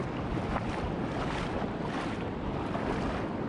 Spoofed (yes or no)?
no